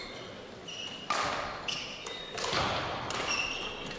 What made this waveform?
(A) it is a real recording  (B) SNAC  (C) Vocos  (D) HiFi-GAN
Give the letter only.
A